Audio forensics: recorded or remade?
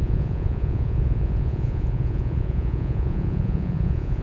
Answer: remade